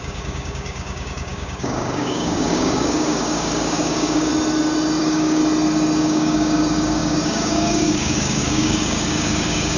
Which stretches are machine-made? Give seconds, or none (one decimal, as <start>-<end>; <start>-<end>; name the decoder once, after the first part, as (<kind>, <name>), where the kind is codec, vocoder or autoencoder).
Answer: 0.0-4.3 (codec, DAC); 5.0-5.4; 6.0-9.8